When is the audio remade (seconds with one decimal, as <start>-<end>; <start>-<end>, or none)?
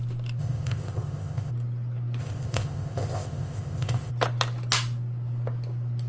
0.4-1.5; 2.2-4.1